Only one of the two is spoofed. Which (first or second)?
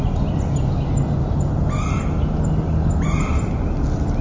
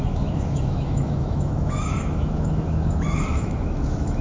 second